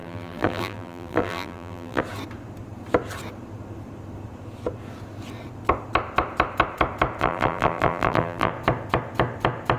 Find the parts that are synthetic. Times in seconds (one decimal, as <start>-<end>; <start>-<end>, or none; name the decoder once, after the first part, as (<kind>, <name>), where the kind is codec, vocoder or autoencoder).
0.0-2.0 (vocoder, BigVGAN v2); 7.2-8.5